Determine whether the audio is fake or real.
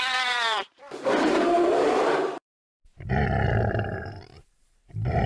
fake